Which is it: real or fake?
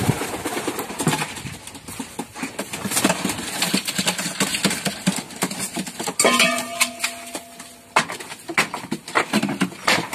real